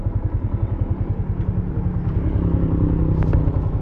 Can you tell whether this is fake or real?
real